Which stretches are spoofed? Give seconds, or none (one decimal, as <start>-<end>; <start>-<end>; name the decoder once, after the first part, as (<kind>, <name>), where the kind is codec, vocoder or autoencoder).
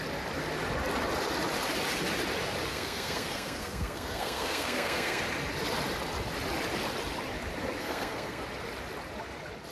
2.7-5.2 (codec, SNAC); 7.8-8.4